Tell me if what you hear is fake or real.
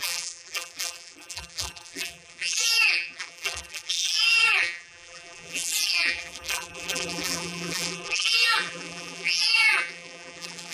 fake